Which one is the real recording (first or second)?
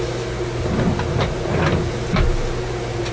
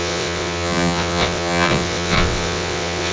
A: first